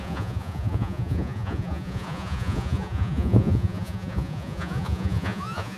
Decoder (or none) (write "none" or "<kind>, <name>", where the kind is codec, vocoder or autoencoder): vocoder, Vocos